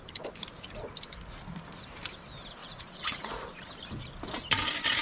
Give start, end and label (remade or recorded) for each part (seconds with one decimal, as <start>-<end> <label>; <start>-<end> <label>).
0.0-2.6 recorded; 2.6-3.7 remade; 3.7-5.0 recorded